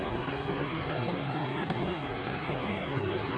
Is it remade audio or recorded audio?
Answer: remade